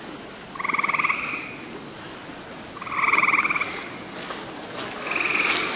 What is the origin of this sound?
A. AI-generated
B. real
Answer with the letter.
B